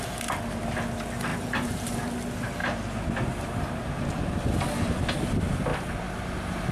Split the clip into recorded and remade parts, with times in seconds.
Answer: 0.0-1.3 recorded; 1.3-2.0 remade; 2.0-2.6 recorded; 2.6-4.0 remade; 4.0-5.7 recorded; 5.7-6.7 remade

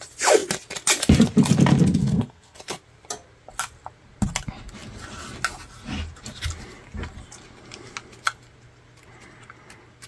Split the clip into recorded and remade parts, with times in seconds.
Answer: 0.0-2.0 recorded; 2.0-2.6 remade; 2.6-10.1 recorded

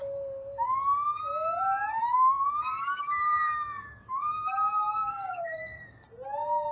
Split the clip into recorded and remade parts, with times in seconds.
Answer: 0.0-2.0 recorded; 2.0-6.0 remade; 6.0-6.7 recorded